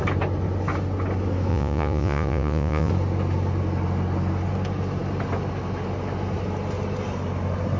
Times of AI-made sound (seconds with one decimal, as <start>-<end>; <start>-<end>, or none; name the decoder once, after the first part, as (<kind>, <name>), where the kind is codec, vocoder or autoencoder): 1.5-2.9 (vocoder, Vocos)